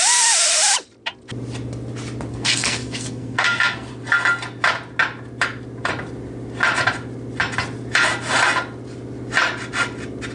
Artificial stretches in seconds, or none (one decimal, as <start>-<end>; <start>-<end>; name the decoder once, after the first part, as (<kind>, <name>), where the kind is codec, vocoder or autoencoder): 2.3-3.9 (codec, SNAC)